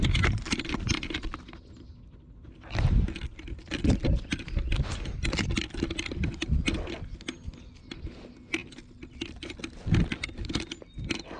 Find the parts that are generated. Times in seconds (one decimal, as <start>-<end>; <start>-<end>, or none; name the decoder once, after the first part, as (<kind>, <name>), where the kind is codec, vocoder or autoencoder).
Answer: none